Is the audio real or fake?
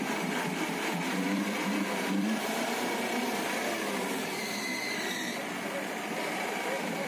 fake